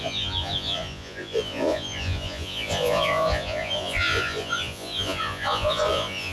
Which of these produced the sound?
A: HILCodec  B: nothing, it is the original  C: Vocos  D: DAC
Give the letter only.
C